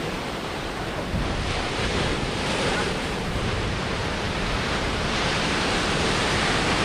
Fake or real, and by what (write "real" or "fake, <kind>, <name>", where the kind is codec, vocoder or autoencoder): fake, vocoder, BigVGAN v2